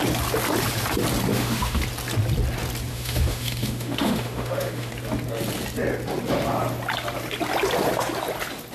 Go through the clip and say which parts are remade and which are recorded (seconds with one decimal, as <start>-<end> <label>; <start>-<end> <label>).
0.0-1.3 recorded; 1.3-1.8 remade; 1.8-2.9 recorded; 2.9-4.9 remade; 4.9-8.7 recorded